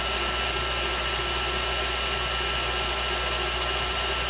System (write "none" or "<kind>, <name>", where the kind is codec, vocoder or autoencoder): none